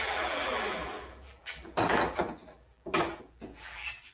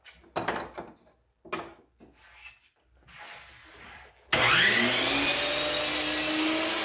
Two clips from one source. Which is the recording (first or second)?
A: second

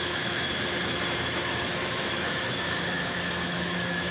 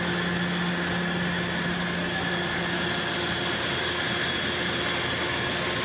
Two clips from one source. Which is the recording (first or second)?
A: second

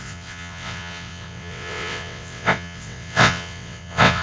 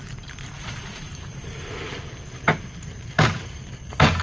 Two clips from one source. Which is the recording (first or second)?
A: second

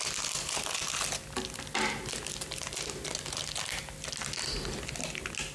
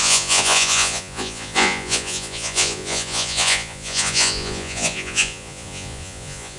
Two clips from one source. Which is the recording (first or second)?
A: first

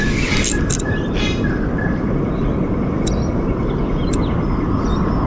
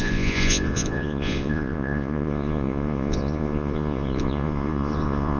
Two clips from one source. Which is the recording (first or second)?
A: first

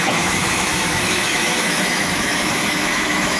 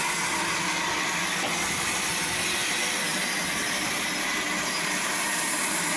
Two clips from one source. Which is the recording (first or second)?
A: second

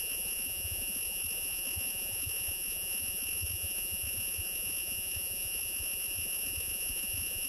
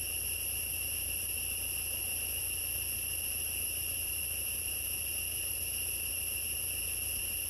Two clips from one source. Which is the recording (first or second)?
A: second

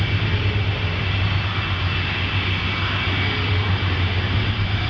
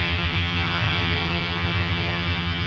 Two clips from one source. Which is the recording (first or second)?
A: first